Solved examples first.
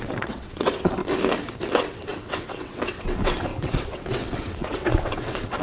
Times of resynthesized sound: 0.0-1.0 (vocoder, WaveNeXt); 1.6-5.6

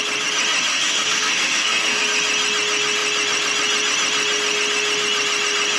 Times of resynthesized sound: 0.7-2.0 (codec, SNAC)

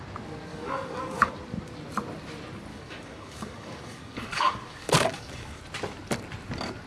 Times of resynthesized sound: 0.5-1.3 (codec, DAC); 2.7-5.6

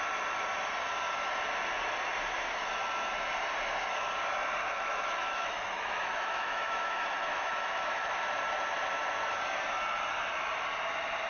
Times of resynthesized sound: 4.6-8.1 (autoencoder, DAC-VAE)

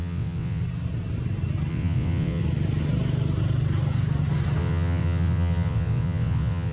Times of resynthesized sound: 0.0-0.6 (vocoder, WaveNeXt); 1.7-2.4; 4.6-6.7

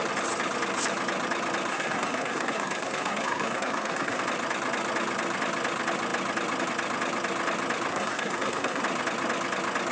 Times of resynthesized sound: 1.7-4.2 (codec, SNAC); 7.9-8.8

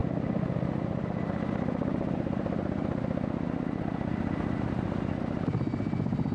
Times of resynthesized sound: 3.8-6.3 (vocoder, BigVGAN v2)